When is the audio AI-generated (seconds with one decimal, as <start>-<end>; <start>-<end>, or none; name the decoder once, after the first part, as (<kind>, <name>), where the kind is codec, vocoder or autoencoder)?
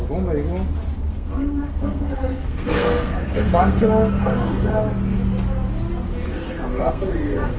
1.1-4.7 (codec, SNAC); 6.3-7.6